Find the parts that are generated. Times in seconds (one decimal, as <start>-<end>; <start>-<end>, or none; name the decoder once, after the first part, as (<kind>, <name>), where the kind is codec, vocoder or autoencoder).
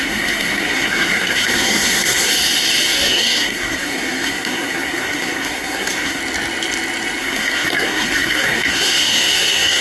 0.0-2.3 (codec, SNAC); 2.9-6.2; 7.2-9.8